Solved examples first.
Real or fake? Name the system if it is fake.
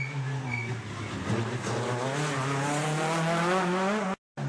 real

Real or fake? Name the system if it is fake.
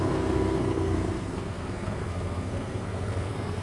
fake, codec, SNAC